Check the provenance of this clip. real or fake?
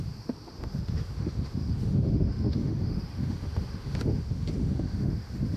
fake